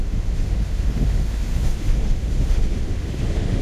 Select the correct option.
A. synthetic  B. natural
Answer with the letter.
A